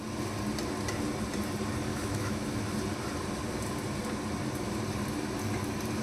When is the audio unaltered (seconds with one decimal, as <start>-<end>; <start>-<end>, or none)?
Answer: 0.0-1.9; 2.6-6.0